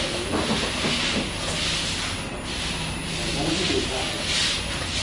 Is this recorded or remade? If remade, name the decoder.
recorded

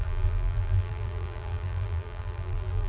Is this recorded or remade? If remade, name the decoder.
remade, vocoder, BigVGAN v2